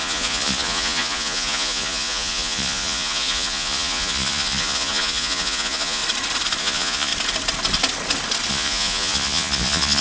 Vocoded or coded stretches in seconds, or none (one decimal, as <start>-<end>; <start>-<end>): 0.0-6.0; 6.6-7.1; 8.5-10.0